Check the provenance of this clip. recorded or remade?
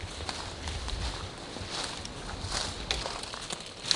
recorded